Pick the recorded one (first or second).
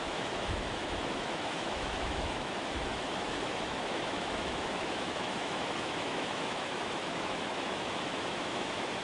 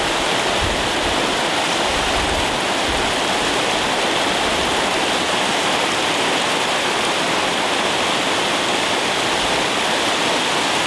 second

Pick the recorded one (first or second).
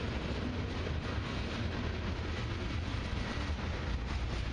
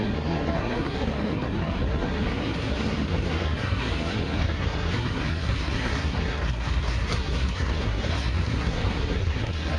first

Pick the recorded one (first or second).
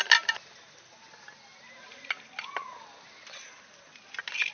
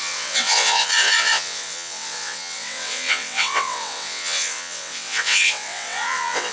first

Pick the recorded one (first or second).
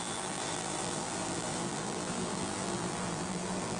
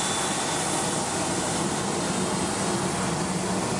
second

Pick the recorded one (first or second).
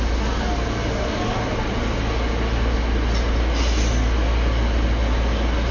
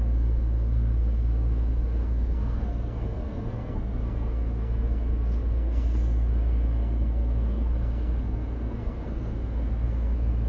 first